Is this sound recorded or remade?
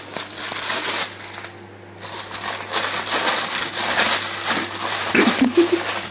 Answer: recorded